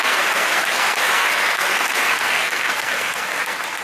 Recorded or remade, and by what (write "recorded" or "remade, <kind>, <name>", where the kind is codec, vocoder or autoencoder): remade, codec, SNAC